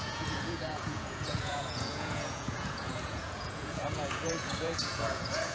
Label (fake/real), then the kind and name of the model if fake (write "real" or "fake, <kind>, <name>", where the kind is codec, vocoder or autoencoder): fake, vocoder, Vocos